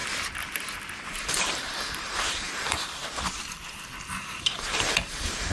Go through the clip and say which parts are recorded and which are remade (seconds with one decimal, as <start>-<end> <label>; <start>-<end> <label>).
0.0-1.1 recorded; 1.1-3.0 remade; 3.0-4.2 recorded; 4.2-5.5 remade